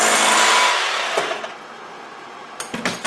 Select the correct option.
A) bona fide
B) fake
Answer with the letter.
A